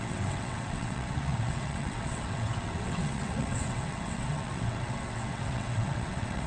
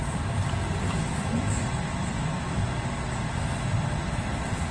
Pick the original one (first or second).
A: second